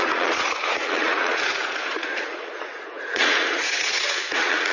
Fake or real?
fake